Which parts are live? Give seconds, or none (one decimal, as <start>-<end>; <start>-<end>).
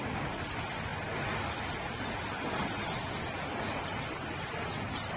0.0-5.2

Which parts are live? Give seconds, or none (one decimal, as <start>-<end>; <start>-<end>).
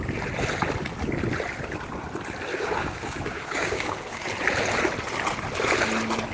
0.0-2.5; 4.3-6.3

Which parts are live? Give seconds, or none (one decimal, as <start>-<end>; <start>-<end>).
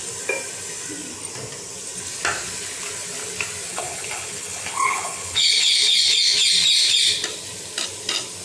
0.0-3.7; 6.1-8.4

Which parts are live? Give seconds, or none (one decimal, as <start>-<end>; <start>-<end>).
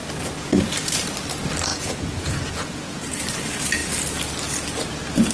0.0-1.7; 3.2-5.3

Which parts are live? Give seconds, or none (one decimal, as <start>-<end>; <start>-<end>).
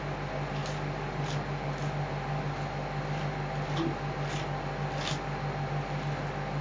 0.0-6.6